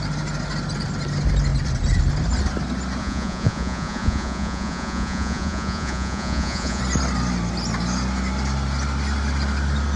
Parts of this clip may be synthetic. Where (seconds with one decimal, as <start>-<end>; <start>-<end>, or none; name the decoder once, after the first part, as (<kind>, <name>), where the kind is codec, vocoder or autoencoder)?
3.0-6.8 (vocoder, Vocos)